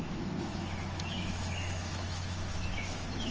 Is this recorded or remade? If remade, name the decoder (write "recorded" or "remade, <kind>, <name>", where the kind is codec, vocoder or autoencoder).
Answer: remade, autoencoder, DAC-VAE